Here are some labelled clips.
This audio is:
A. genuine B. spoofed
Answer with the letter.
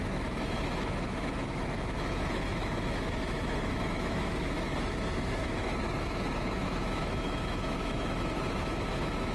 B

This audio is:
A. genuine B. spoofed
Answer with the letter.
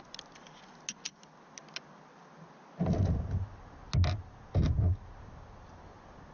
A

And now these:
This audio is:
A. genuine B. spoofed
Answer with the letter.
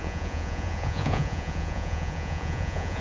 B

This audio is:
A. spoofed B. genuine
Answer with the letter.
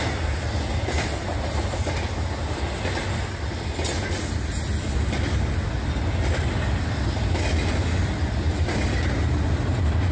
B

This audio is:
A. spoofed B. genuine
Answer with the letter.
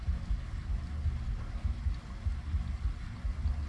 B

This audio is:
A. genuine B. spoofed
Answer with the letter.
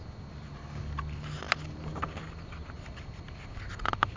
A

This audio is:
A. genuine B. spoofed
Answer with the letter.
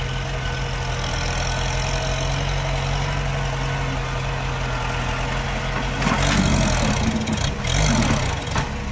A